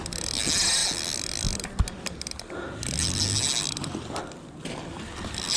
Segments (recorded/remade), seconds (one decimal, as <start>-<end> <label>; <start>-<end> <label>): 0.0-5.6 recorded